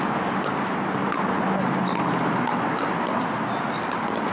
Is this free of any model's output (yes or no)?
yes